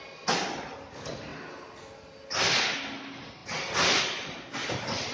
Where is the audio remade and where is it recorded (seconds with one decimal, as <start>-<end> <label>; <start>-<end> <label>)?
0.0-5.1 recorded